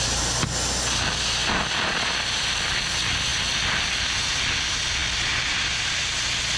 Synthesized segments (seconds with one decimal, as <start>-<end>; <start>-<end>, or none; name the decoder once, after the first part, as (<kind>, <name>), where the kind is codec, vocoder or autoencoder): none